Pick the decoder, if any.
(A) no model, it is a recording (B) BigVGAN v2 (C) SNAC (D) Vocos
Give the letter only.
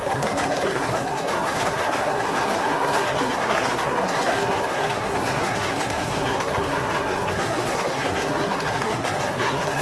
C